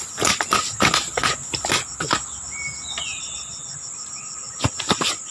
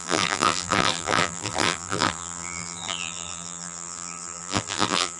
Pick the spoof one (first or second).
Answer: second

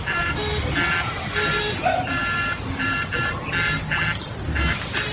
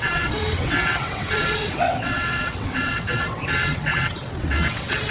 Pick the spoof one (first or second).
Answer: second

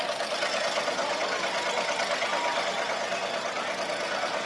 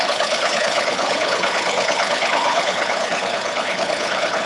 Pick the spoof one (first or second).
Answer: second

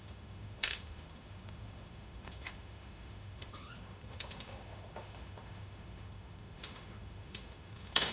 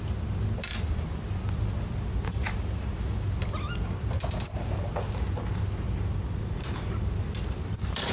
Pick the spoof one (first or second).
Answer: first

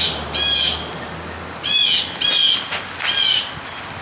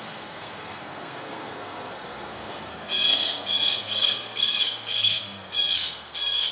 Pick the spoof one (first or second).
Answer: second